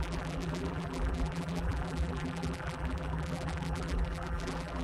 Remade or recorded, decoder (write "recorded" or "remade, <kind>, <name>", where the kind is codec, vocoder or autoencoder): remade, vocoder, BigVGAN v2